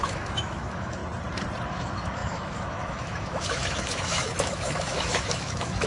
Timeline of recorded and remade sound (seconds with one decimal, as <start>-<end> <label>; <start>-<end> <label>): 0.0-1.0 remade; 1.0-1.7 recorded; 1.7-5.9 remade